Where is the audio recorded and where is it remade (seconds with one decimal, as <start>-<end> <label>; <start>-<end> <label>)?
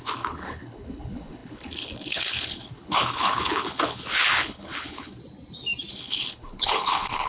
0.0-5.2 remade; 5.2-5.9 recorded; 5.9-7.3 remade